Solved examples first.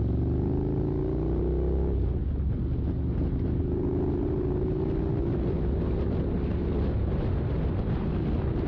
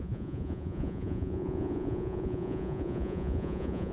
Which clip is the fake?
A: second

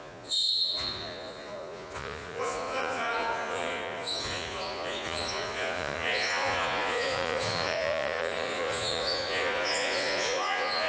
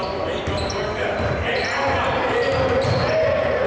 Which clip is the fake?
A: first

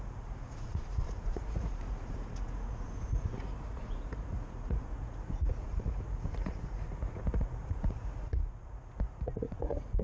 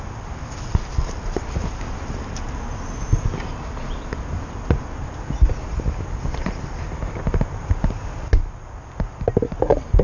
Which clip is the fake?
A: first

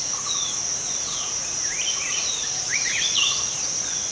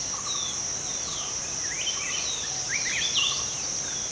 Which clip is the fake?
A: first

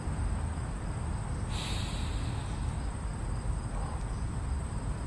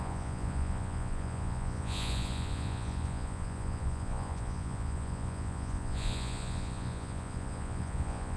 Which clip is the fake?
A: second